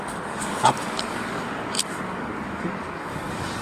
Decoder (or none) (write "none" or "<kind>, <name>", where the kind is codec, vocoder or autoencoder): codec, DAC